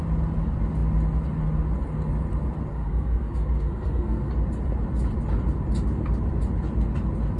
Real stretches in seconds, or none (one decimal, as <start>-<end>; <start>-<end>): 0.0-2.7; 4.3-7.4